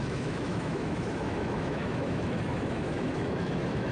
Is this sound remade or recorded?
remade